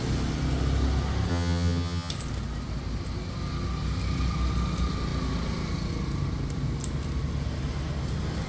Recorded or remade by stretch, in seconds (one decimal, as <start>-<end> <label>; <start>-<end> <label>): 0.0-1.3 recorded; 1.3-2.1 remade; 2.1-8.5 recorded